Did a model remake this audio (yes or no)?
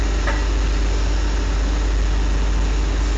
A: no